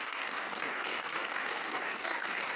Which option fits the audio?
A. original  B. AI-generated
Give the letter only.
B